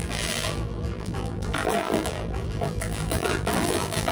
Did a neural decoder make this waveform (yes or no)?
yes